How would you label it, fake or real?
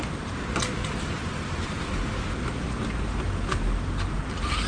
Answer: real